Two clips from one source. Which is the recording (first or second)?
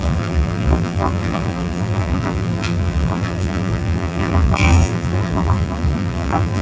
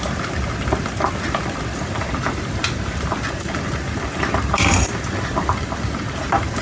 second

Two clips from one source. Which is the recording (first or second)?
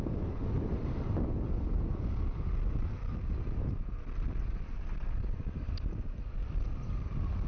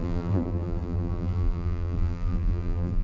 first